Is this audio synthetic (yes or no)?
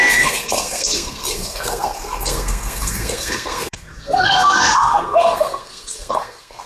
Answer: yes